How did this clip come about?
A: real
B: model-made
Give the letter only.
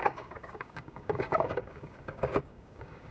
B